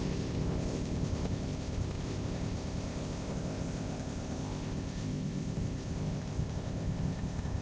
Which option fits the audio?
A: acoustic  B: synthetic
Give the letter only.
B